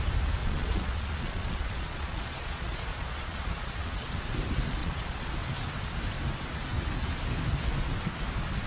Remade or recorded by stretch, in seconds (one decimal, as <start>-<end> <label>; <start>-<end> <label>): 0.0-0.4 recorded; 0.4-4.3 remade; 4.3-4.8 recorded; 4.8-5.3 remade; 5.3-8.7 recorded